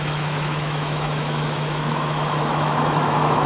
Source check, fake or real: fake